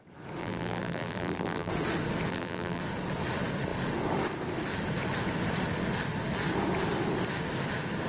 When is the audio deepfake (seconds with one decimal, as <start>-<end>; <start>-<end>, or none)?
0.4-1.7; 2.3-2.8